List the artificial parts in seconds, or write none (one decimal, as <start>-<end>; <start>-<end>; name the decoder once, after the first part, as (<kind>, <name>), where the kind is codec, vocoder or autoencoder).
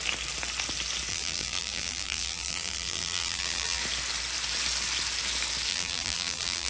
1.1-3.8 (vocoder, BigVGAN v2); 5.7-6.7